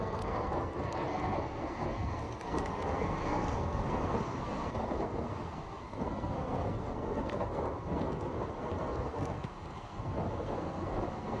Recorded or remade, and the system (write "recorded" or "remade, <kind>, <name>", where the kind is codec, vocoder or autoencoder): remade, codec, SNAC